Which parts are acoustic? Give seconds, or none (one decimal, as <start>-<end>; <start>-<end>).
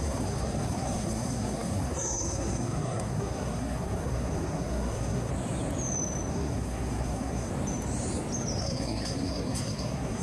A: 5.3-6.3; 7.5-8.6